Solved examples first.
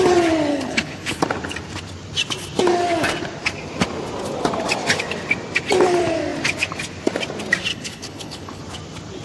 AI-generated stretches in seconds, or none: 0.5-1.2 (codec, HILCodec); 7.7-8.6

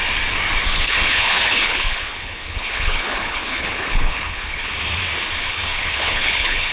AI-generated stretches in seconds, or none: 0.7-4.7 (codec, HILCodec); 5.5-6.7

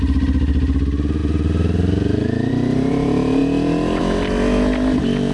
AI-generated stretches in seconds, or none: none